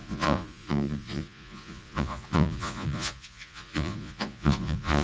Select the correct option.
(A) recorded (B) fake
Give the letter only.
B